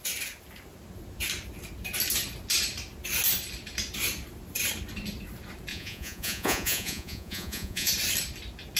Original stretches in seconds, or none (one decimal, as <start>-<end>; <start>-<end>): 0.0-5.7; 7.9-8.8